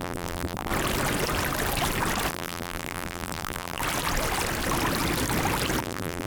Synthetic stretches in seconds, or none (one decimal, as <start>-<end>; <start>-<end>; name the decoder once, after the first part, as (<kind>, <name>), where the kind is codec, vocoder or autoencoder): 0.0-0.7 (vocoder, BigVGAN v2); 2.3-3.8; 5.8-6.3